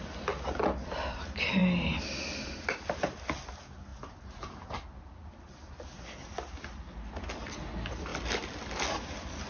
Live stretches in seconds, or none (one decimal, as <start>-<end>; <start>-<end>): 0.0-9.5